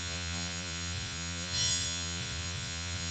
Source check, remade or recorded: remade